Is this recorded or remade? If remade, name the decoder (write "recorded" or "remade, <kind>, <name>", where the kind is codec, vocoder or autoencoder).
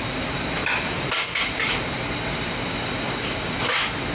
remade, vocoder, BigVGAN v2